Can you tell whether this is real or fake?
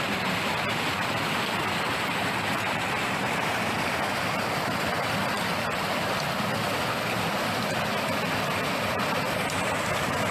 real